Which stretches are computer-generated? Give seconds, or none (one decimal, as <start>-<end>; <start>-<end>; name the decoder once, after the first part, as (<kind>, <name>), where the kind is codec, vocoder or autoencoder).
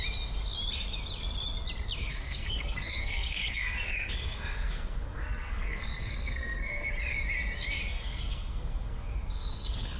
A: 2.0-6.9 (codec, SNAC); 7.9-10.0